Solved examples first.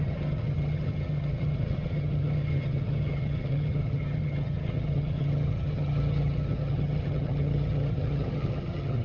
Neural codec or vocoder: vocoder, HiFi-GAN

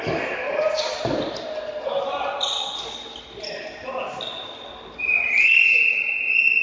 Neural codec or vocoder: none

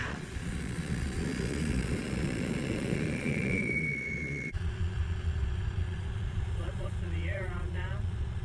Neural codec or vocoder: vocoder, Vocos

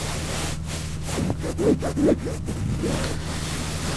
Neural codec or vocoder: none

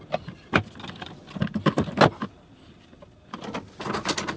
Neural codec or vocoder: none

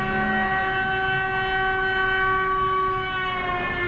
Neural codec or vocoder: none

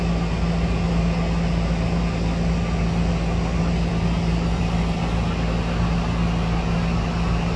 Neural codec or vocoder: none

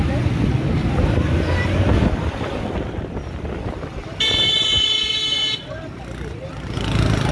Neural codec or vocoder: none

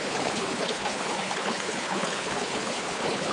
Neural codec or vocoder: codec, HILCodec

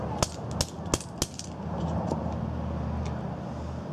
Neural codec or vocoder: none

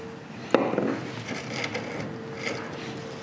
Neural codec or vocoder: none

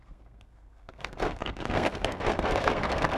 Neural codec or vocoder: codec, SNAC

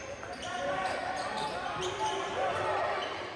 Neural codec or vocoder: vocoder, BigVGAN v2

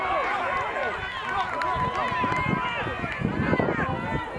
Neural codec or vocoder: none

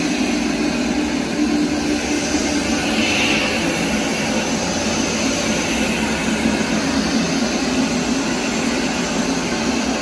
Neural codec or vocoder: none